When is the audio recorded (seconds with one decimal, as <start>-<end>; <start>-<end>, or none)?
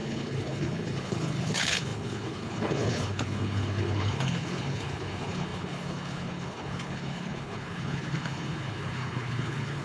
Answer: none